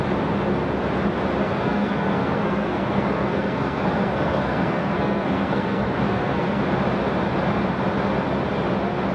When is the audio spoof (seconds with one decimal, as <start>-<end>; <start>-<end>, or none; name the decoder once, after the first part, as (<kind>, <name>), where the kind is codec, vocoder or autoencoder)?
1.4-6.6 (codec, SNAC)